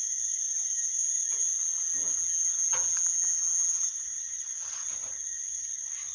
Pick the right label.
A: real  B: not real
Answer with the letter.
A